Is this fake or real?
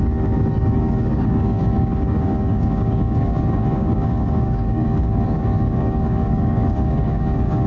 fake